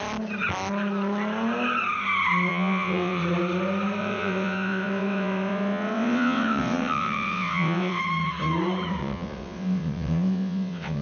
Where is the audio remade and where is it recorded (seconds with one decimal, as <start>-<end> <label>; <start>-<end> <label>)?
0.0-2.5 recorded; 2.5-3.2 remade; 3.2-4.0 recorded; 4.0-8.0 remade; 8.0-9.0 recorded; 9.0-11.0 remade